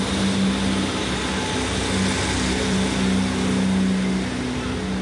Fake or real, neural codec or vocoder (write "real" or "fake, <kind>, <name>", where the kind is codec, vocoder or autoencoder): real